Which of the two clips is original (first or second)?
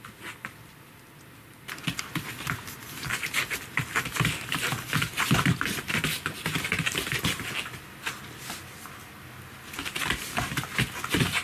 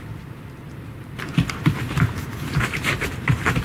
first